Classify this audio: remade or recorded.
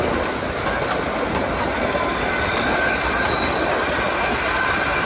recorded